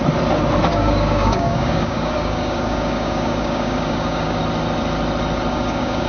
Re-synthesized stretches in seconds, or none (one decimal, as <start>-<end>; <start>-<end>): 0.7-4.4; 5.5-6.1